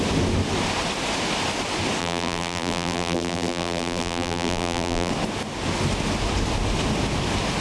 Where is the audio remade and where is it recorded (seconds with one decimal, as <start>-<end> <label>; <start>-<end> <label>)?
0.0-2.0 recorded; 2.0-5.1 remade; 5.1-7.6 recorded